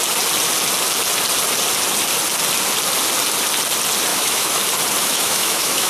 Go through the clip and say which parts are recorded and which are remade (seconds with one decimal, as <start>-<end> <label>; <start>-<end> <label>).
0.0-4.1 recorded; 4.1-4.6 remade; 4.6-5.0 recorded; 5.0-5.9 remade